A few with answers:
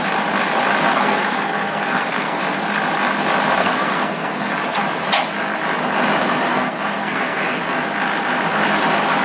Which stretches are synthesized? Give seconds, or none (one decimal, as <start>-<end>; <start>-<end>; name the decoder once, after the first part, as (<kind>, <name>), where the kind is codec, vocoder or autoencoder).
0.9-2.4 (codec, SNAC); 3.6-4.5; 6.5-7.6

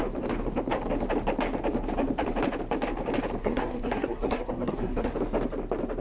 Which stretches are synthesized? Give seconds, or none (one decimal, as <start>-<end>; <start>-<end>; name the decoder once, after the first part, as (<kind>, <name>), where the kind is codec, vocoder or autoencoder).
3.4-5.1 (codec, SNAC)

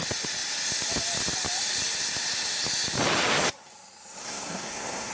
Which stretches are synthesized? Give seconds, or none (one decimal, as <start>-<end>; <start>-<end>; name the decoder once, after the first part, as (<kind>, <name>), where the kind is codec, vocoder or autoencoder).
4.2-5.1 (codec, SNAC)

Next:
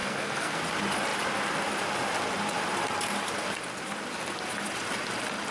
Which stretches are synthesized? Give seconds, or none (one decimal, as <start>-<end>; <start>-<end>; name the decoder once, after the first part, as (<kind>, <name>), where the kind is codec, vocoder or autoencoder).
0.0-0.6 (codec, SNAC)